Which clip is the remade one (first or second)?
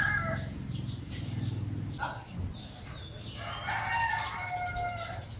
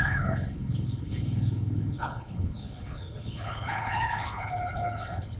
second